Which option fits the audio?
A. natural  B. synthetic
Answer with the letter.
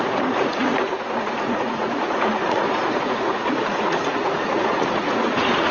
B